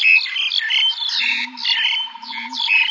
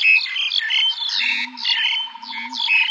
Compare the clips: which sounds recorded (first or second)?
second